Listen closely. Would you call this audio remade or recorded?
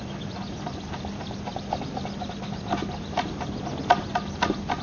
recorded